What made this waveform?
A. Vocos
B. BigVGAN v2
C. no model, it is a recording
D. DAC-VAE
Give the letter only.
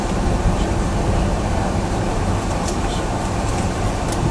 B